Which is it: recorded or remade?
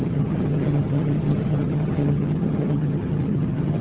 remade